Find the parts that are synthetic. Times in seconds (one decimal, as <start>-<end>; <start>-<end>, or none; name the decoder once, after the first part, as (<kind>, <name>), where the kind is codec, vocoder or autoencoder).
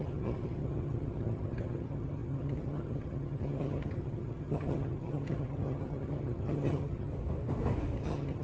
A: 0.0-7.1 (vocoder, HiFi-GAN); 8.0-8.4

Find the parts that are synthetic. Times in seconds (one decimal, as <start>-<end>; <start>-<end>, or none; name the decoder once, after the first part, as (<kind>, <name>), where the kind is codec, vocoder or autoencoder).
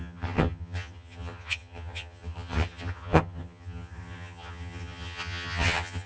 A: 0.0-6.1 (vocoder, HiFi-GAN)